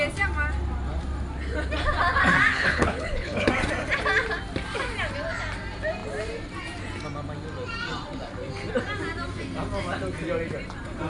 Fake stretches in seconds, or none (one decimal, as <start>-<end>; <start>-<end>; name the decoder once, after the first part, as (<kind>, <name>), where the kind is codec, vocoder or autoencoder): 2.5-3.5 (codec, HILCodec)